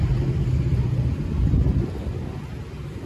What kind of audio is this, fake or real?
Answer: real